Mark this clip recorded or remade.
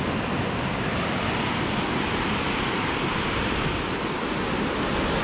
recorded